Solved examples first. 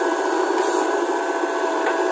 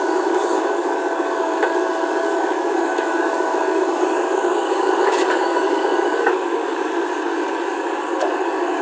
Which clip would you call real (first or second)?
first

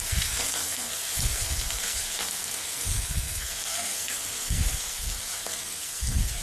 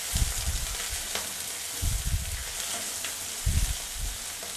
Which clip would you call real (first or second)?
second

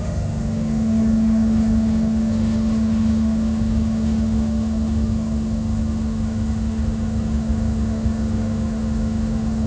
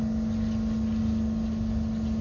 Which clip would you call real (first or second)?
second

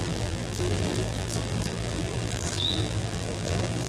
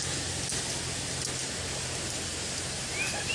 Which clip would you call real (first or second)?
second